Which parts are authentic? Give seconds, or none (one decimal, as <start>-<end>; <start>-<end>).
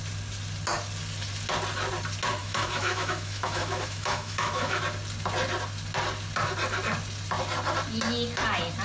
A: 0.0-2.4; 4.8-8.8